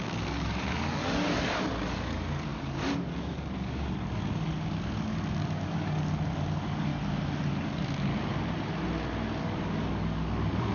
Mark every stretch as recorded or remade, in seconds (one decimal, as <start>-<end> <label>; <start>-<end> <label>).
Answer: 0.0-6.9 remade; 6.9-7.5 recorded; 7.5-8.1 remade; 8.1-9.4 recorded; 9.4-10.7 remade